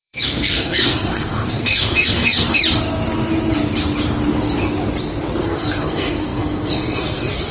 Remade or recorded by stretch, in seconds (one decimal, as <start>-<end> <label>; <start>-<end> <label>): 0.0-2.6 remade; 2.6-5.4 recorded; 5.4-7.5 remade

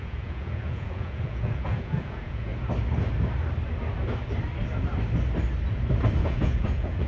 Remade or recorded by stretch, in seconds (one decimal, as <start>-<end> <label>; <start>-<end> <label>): 0.0-2.5 remade; 2.5-6.2 recorded; 6.2-7.1 remade

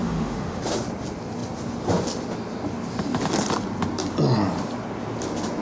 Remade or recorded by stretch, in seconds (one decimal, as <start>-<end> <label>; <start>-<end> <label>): 0.0-0.6 remade; 0.6-5.6 recorded

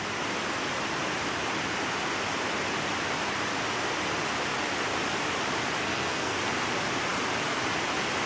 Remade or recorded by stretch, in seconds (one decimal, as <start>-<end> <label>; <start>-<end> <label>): 0.0-5.8 recorded; 5.8-6.4 remade; 6.4-8.3 recorded

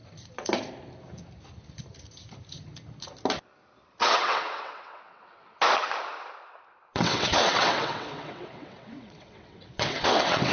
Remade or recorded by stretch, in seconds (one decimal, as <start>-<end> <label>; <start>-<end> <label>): 0.0-4.0 recorded; 4.0-5.6 remade; 5.6-6.9 recorded; 6.9-10.5 remade

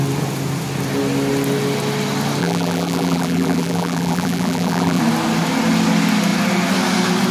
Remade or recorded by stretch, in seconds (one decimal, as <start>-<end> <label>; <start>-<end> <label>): 0.0-2.4 recorded; 2.4-5.0 remade; 5.0-7.3 recorded

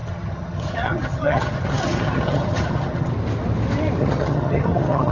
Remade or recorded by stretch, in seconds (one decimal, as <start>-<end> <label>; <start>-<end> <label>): 0.0-3.1 remade; 3.1-4.0 recorded; 4.0-5.1 remade

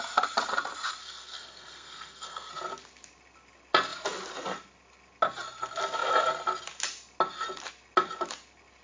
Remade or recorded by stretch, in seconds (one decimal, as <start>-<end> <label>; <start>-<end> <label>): 0.0-1.0 recorded; 1.0-2.5 remade; 2.5-8.8 recorded